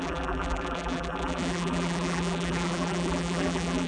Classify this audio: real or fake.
fake